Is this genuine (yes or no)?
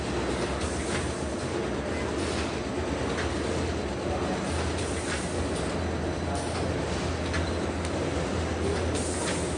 yes